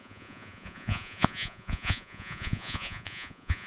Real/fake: fake